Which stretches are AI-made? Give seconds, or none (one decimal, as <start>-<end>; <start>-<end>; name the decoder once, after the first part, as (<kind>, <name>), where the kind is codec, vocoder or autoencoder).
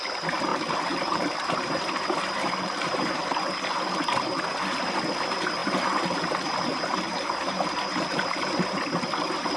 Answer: 0.5-3.2 (vocoder, BigVGAN v2); 5.6-6.2; 6.7-8.8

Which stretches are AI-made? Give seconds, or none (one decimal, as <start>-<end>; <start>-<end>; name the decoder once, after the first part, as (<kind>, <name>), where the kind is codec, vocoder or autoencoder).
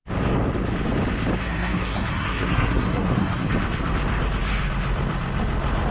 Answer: 1.4-3.5 (codec, SNAC)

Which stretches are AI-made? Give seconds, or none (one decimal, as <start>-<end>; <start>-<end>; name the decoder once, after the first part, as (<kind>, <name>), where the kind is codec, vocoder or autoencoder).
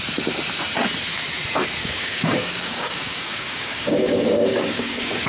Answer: 1.8-5.3 (codec, DAC)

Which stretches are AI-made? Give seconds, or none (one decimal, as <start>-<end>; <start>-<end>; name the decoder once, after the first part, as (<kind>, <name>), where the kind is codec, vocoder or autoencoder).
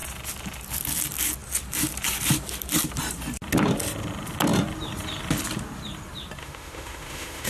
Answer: 6.4-7.5 (autoencoder, DAC-VAE)